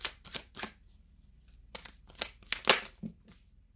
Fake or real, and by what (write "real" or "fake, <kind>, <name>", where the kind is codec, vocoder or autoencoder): real